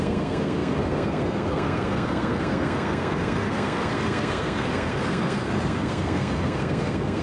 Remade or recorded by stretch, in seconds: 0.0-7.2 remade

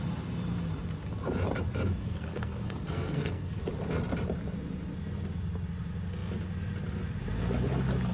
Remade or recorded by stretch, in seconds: 0.0-2.0 recorded; 2.0-3.6 remade; 3.6-8.1 recorded

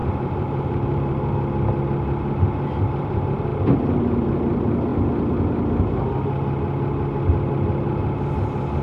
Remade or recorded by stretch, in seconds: 0.0-1.3 remade; 1.3-8.8 recorded

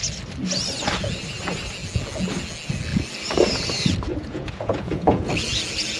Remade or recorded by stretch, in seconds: 0.0-4.1 recorded; 4.1-5.3 remade; 5.3-6.0 recorded